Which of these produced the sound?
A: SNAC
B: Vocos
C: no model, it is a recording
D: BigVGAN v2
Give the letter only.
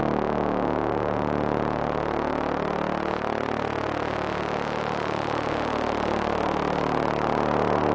C